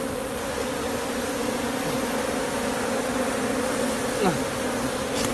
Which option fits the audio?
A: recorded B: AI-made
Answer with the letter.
A